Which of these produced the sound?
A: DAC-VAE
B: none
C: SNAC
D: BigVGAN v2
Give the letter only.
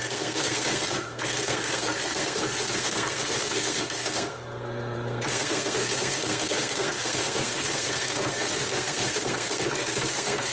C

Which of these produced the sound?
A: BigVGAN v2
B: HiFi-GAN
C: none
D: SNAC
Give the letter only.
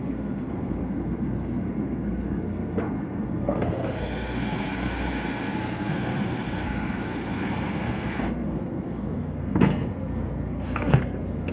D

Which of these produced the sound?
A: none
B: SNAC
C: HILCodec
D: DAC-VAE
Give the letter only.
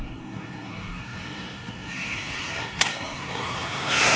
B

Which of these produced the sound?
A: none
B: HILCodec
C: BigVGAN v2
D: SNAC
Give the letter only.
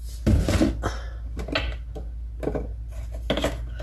A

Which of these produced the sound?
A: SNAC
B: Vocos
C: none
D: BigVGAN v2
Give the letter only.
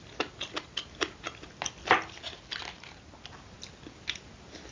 C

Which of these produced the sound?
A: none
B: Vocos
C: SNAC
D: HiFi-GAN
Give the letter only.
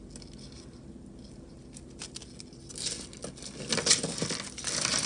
A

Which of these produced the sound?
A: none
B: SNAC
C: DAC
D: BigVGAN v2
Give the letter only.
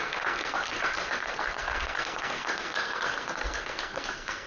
B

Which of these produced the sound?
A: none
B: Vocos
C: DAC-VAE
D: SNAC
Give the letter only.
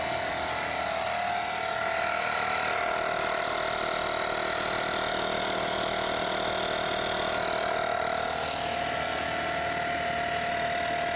A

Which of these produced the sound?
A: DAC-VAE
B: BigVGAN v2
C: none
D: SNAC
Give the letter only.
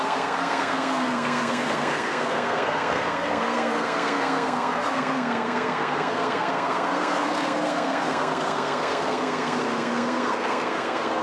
D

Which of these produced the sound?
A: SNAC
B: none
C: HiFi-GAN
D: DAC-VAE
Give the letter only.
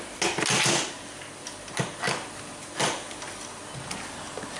B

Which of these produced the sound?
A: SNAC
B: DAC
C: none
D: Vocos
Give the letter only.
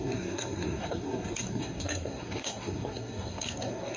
A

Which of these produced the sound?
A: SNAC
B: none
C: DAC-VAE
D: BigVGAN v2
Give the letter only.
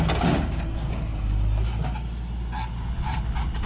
B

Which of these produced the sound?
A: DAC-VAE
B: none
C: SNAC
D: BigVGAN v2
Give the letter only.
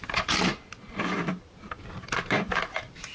B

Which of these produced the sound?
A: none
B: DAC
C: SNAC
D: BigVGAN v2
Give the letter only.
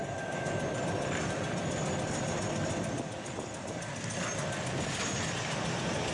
A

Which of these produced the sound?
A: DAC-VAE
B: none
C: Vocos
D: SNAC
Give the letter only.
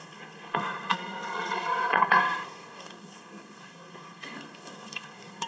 D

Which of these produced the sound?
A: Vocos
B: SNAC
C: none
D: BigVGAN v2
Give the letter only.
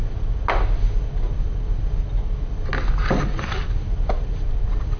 C